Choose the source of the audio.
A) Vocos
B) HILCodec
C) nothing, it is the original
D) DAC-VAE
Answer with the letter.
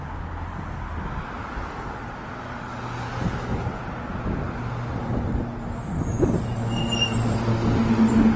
C